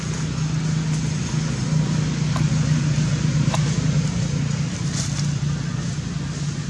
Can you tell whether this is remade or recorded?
recorded